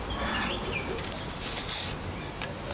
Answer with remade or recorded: recorded